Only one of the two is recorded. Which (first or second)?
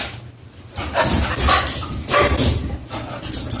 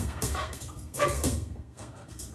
first